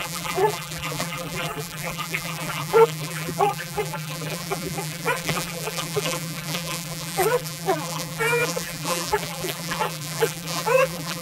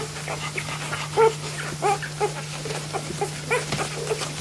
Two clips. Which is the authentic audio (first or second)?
second